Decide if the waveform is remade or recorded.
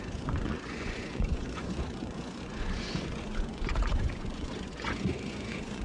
remade